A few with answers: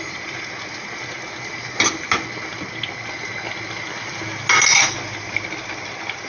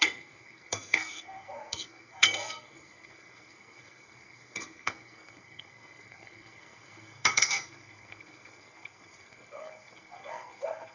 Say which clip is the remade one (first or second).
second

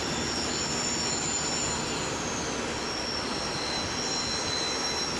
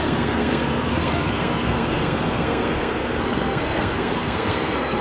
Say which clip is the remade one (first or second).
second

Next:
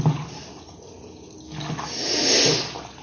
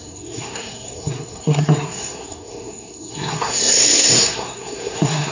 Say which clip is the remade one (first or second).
second